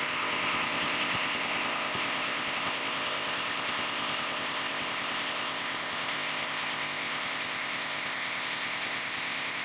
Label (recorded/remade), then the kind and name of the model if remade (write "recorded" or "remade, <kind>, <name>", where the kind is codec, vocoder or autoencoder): remade, codec, ZipCodec